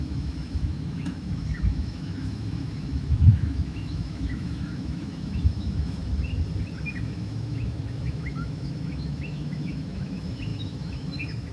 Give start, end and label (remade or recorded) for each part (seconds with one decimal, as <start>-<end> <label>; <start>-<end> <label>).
0.0-6.0 remade; 6.0-7.0 recorded; 7.0-11.5 remade